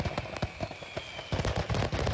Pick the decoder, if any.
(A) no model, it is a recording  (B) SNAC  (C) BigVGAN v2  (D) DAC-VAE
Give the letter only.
A